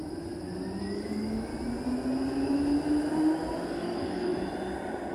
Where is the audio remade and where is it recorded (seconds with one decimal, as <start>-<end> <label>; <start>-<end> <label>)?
0.0-0.8 recorded; 0.8-1.5 remade; 1.5-3.7 recorded; 3.7-4.3 remade; 4.3-5.1 recorded